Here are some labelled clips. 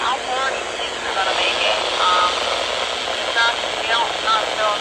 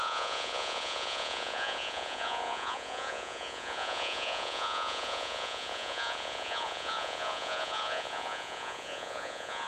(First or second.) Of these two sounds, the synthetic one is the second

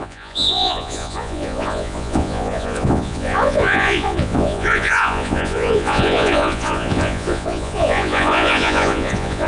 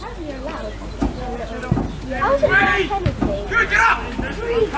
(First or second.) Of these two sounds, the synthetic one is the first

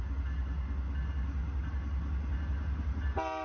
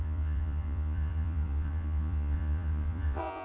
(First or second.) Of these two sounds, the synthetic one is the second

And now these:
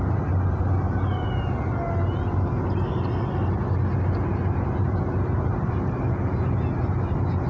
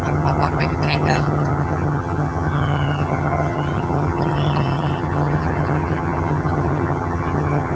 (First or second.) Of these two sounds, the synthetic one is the second